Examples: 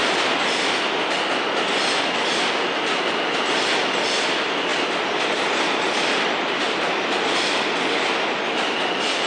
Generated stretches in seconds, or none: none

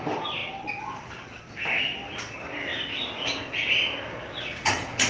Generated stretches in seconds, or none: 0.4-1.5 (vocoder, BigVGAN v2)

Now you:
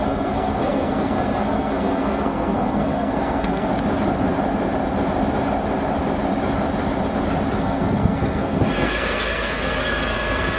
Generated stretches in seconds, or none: 0.0-3.7 (codec, SNAC); 7.6-10.6